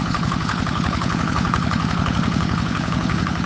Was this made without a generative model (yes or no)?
no